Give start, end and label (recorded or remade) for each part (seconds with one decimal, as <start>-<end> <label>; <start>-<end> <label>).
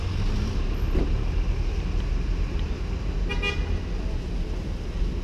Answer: 0.0-5.2 recorded